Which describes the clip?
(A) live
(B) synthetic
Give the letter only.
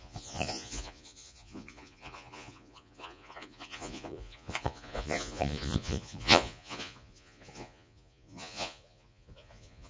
B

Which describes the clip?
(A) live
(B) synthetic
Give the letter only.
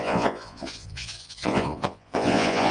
B